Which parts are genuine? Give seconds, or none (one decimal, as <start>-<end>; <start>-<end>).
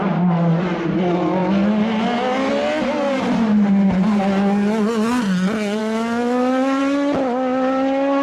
0.0-5.8; 6.8-8.2